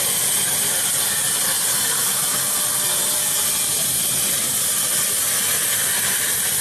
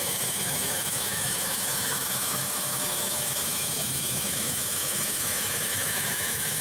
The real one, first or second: first